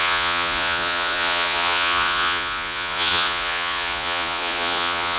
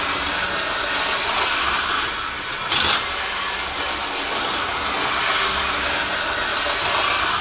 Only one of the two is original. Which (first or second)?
second